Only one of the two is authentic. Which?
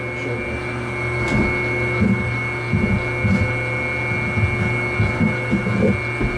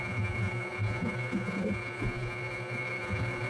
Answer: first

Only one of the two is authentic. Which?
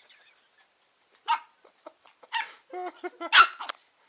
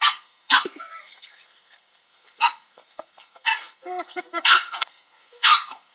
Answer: first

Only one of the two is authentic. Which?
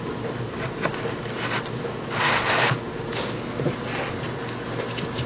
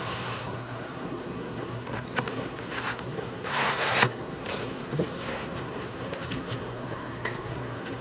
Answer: first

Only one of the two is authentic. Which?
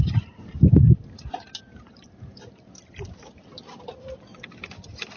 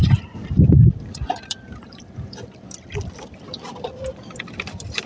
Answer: first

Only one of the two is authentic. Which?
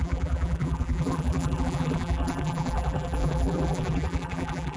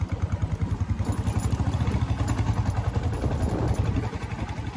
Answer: second